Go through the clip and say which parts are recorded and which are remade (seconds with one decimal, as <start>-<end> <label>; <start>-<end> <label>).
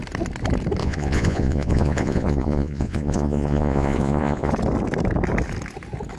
0.0-0.8 recorded; 0.8-4.5 remade; 4.5-6.2 recorded